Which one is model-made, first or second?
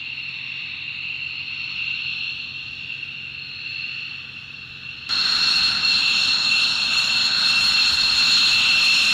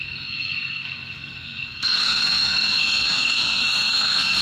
second